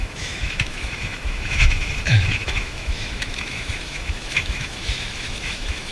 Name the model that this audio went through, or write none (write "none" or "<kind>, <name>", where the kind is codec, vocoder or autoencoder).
autoencoder, DAC-VAE